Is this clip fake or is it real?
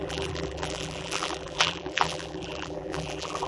fake